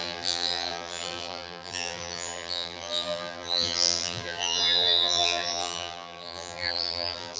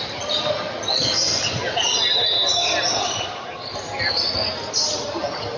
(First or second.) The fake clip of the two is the first